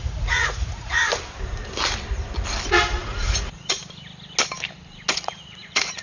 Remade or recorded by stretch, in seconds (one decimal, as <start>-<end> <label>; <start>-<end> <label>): 0.0-1.0 remade; 1.0-3.0 recorded; 3.0-3.8 remade; 3.8-5.1 recorded; 5.1-6.0 remade